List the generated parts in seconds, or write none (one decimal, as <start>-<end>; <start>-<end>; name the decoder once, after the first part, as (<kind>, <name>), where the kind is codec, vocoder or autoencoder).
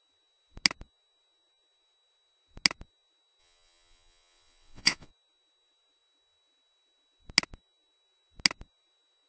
3.4-5.1 (vocoder, Vocos)